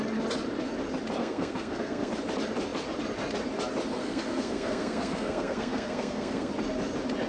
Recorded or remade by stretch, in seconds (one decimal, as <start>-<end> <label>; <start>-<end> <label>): 0.0-1.2 recorded; 1.2-2.1 remade; 2.1-4.0 recorded; 4.0-6.5 remade; 6.5-7.3 recorded